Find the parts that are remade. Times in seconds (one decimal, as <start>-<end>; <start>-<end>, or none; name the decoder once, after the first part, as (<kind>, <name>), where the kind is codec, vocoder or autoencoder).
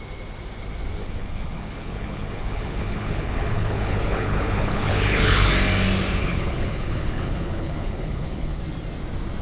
1.0-5.5 (codec, HILCodec); 6.2-8.6